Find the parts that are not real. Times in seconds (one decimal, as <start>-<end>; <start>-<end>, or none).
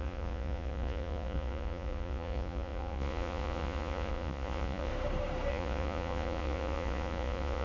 0.0-4.9; 5.5-7.6